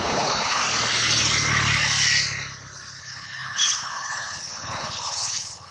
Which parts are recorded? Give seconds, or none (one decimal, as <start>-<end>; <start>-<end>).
0.6-3.0